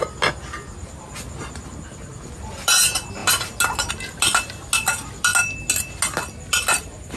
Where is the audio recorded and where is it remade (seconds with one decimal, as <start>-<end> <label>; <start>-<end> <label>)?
0.0-7.2 recorded